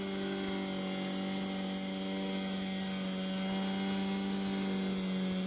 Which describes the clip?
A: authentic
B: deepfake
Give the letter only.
A